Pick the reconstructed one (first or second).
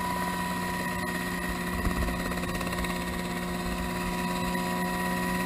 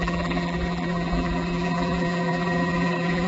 second